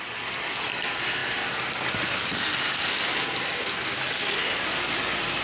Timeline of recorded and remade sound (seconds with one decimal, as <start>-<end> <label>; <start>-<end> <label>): 0.0-5.4 recorded